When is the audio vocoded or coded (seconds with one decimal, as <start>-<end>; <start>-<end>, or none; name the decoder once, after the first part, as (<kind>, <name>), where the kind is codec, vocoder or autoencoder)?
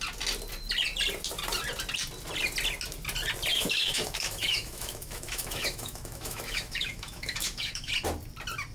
3.5-7.9 (autoencoder, DAC-VAE)